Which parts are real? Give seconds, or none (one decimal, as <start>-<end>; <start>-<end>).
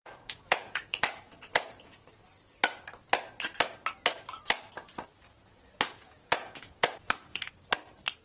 2.0-5.4; 7.5-8.2